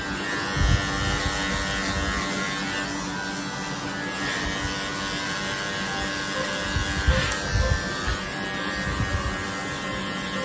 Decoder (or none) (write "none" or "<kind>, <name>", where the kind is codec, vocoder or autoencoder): none